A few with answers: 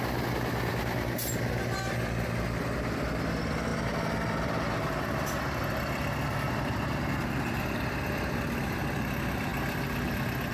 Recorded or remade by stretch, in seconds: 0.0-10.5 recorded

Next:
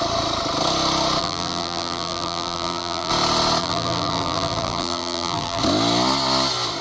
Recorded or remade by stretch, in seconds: 0.0-1.2 recorded; 1.2-3.1 remade; 3.1-3.6 recorded; 3.6-5.6 remade; 5.6-6.8 recorded

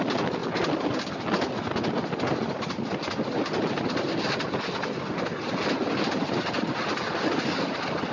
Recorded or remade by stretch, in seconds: 0.0-8.1 recorded

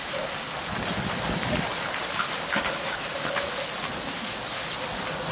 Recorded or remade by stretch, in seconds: 0.0-5.3 recorded